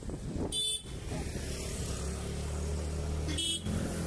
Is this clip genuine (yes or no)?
yes